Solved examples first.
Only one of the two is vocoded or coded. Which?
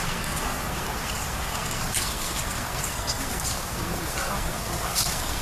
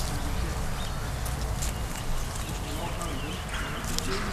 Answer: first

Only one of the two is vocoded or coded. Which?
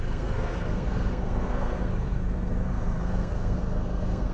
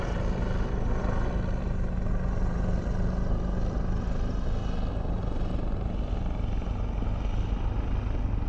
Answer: first